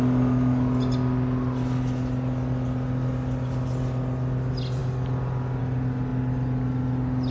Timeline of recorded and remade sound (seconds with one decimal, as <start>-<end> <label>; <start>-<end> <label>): 0.0-7.3 recorded